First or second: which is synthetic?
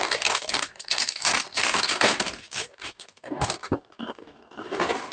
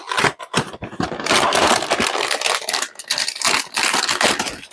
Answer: first